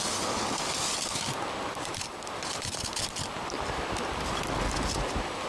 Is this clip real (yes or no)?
yes